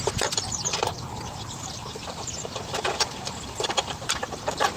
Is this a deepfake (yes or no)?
yes